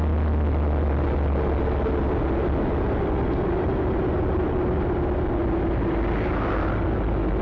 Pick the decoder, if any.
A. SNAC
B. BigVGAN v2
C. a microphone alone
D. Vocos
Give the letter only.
C